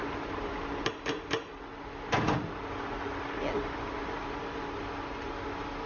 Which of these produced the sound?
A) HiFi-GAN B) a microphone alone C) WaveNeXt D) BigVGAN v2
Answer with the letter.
B